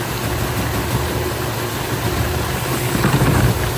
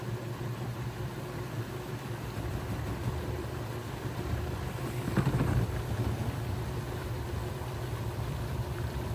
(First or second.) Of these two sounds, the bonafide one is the first